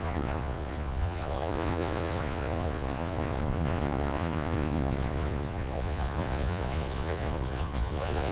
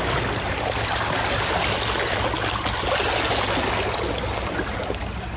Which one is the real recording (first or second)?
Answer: second